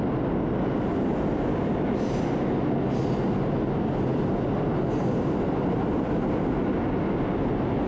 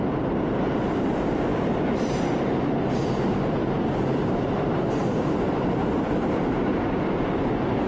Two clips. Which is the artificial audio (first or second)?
second